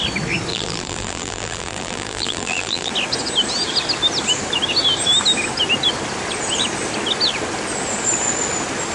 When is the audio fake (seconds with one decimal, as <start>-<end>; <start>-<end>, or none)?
0.5-2.9